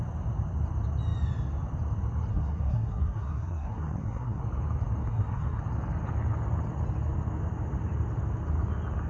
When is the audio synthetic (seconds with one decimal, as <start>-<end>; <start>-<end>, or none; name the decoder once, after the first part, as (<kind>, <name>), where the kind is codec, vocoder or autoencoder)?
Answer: 2.3-4.4 (codec, SNAC); 5.0-5.6